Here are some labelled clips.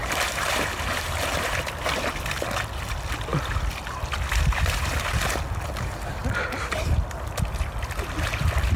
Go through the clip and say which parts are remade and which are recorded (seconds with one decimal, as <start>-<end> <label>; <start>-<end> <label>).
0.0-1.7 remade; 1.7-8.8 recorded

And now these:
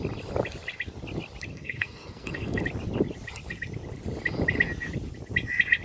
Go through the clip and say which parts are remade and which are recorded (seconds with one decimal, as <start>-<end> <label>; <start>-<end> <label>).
0.0-1.5 recorded; 1.5-2.6 remade; 2.6-5.8 recorded

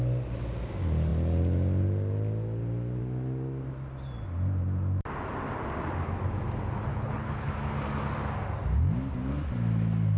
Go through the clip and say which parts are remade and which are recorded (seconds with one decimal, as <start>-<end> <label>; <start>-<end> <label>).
0.0-6.9 recorded; 6.9-7.5 remade; 7.5-10.2 recorded

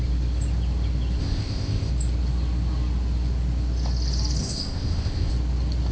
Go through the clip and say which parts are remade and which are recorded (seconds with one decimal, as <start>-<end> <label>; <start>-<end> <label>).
0.0-1.2 recorded; 1.2-1.9 remade; 1.9-4.4 recorded; 4.4-5.3 remade; 5.3-5.9 recorded

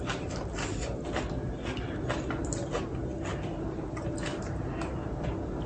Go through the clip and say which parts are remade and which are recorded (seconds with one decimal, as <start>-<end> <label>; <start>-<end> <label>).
0.0-5.7 recorded